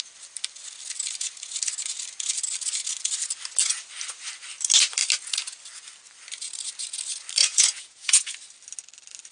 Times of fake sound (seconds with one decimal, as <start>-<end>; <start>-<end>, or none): 7.4-8.3